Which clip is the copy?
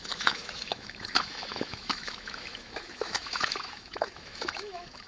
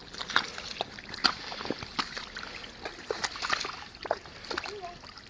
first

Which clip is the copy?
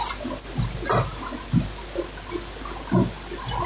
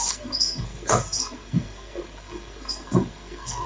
second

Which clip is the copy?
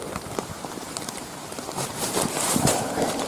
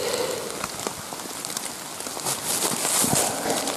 first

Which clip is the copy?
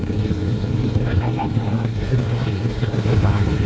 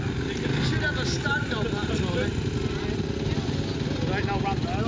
first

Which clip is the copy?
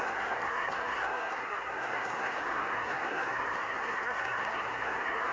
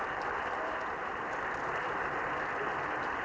first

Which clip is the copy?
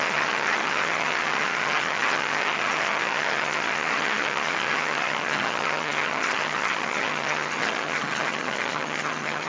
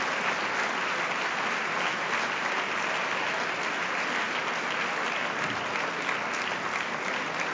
first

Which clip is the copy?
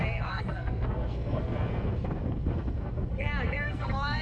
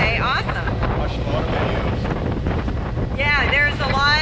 first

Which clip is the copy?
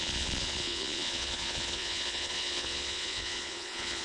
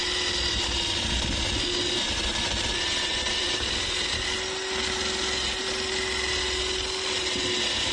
first